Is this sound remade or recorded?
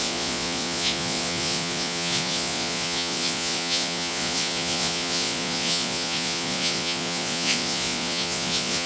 remade